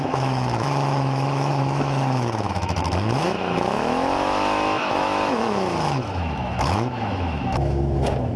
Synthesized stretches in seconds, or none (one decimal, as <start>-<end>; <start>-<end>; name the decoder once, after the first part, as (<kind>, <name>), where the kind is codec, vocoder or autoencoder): 0.0-8.4 (autoencoder, DAC-VAE)